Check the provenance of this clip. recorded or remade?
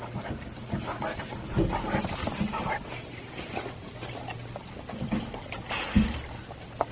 recorded